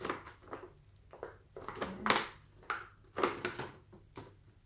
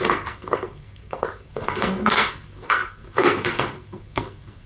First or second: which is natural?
first